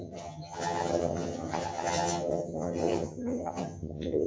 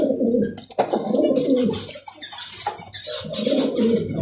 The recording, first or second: second